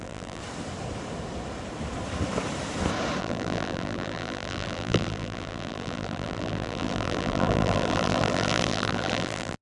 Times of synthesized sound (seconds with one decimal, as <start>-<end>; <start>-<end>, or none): 0.0-0.4; 3.2-9.6